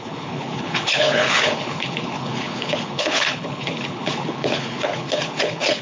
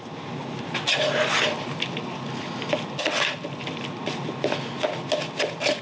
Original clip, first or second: second